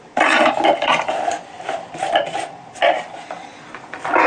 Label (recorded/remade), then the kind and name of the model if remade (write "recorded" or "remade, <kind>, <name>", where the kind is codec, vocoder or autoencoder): recorded